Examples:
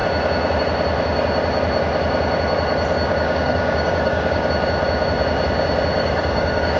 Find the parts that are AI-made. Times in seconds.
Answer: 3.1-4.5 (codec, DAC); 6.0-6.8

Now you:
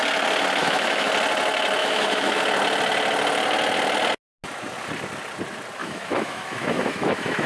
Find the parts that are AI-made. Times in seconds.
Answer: 0.6-1.1 (autoencoder, DAC-VAE); 1.8-2.4; 5.8-7.5

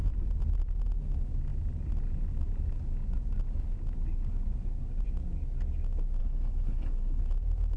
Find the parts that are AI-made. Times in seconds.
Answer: 6.2-7.2 (codec, HILCodec)

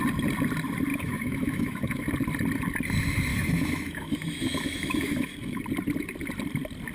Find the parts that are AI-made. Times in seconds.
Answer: 0.9-2.1 (autoencoder, DAC-VAE); 3.3-5.6